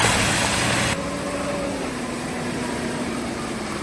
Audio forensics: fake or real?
fake